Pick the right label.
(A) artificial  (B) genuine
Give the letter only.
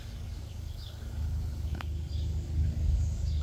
A